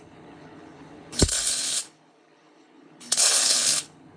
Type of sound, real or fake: fake